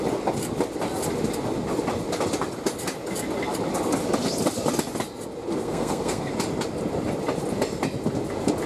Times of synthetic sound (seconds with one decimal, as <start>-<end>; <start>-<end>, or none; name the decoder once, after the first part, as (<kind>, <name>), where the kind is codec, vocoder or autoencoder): 5.6-6.3 (codec, SNAC)